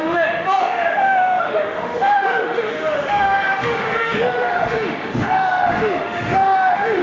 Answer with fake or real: fake